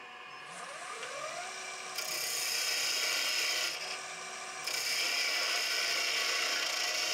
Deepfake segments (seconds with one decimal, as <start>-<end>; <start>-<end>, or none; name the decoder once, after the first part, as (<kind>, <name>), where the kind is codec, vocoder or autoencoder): none